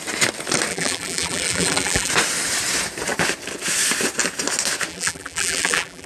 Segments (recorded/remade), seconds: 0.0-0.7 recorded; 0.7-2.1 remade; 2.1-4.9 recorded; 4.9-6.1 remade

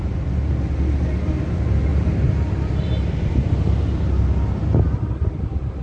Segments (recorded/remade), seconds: 0.0-1.9 recorded; 1.9-3.8 remade; 3.8-5.8 recorded

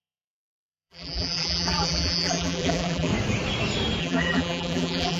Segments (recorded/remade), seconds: 0.0-3.1 remade; 3.1-4.0 recorded; 4.0-5.2 remade

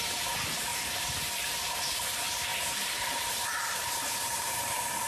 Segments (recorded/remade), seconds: 0.0-5.1 remade

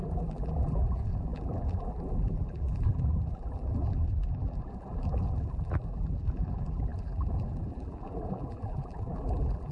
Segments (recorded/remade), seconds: 0.0-9.7 remade

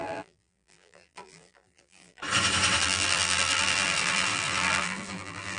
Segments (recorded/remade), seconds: 0.0-2.2 remade; 2.2-2.8 recorded; 2.8-5.6 remade

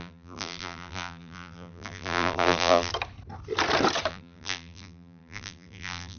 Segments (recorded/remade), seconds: 0.0-2.9 remade; 2.9-4.1 recorded; 4.1-6.2 remade